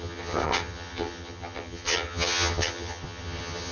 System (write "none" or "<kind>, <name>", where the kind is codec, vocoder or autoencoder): vocoder, HiFi-GAN